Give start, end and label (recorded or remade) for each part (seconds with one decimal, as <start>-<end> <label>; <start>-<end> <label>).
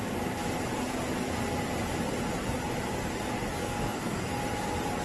0.0-3.6 recorded; 3.6-4.4 remade; 4.4-5.0 recorded